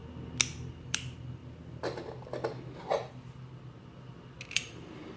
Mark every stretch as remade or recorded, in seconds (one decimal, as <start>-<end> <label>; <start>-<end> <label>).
0.0-0.8 recorded; 0.8-1.4 remade; 1.4-4.5 recorded; 4.5-5.2 remade